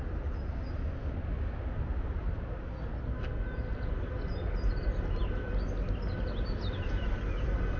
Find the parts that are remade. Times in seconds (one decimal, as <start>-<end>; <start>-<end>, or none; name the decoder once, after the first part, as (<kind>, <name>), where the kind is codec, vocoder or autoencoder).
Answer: none